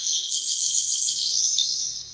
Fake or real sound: fake